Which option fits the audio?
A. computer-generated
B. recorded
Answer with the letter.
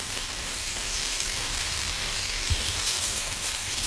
A